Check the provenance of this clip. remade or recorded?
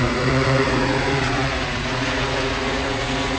remade